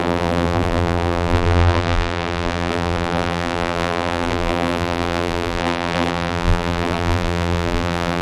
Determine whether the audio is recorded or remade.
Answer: remade